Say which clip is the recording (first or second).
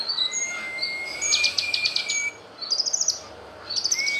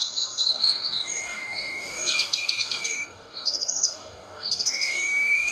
first